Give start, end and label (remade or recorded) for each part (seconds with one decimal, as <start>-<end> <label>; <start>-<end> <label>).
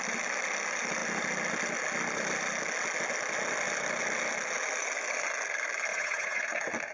0.0-5.9 recorded; 5.9-6.4 remade; 6.4-6.9 recorded